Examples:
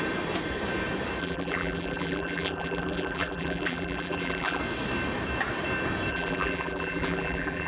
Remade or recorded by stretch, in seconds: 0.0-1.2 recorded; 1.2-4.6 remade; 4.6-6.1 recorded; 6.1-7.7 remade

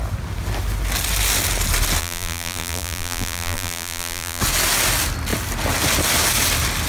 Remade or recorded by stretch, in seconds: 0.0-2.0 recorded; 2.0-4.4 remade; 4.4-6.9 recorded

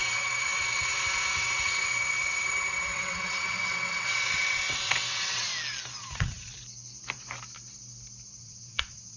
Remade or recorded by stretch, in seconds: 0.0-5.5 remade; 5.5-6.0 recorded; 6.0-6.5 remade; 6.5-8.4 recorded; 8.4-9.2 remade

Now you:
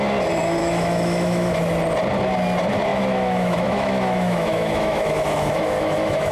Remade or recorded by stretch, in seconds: 0.0-0.6 recorded; 0.6-1.6 remade; 1.6-2.9 recorded; 2.9-6.3 remade

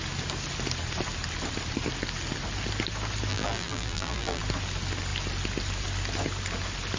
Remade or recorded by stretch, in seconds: 0.0-3.3 recorded; 3.3-4.4 remade; 4.4-7.0 recorded

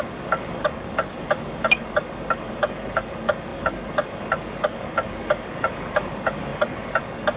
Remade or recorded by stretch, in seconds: 0.0-7.4 remade

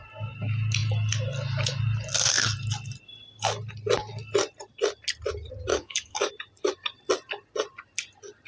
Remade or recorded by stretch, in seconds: 0.0-5.7 recorded; 5.7-6.3 remade; 6.3-8.5 recorded

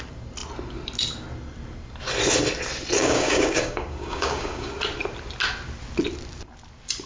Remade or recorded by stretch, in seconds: 0.0-3.0 recorded; 3.0-4.7 remade; 4.7-7.1 recorded